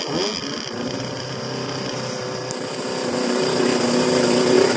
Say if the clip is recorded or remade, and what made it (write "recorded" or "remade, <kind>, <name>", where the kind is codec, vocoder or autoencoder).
recorded